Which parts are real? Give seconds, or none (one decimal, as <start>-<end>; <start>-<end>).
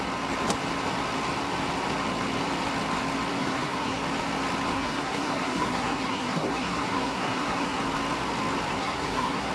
0.0-3.4; 4.0-4.7; 7.8-8.7